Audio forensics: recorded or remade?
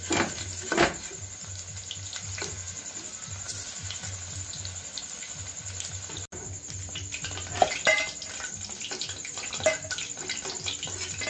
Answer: recorded